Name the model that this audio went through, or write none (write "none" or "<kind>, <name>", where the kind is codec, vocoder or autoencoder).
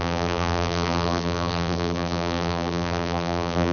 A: vocoder, BigVGAN v2